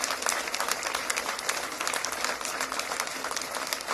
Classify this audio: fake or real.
real